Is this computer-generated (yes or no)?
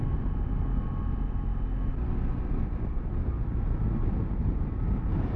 no